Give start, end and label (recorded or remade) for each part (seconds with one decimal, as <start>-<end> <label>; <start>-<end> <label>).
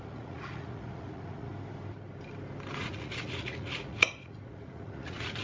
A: 0.0-1.5 remade; 1.5-2.8 recorded; 2.8-5.4 remade